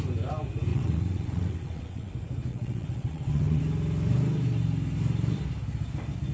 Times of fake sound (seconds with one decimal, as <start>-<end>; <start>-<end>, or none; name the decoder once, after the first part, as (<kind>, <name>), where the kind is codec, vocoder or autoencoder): 0.7-2.1 (vocoder, WaveNeXt); 2.5-3.6